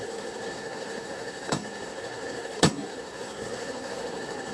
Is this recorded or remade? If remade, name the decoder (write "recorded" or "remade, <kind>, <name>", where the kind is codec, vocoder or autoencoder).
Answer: remade, codec, SNAC